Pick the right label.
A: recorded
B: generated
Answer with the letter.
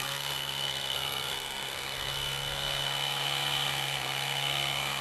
B